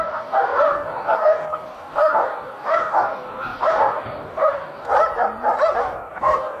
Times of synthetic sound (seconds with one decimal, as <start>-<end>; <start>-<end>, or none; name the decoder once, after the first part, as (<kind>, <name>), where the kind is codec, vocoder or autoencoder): 0.0-4.9 (codec, DAC); 5.8-6.6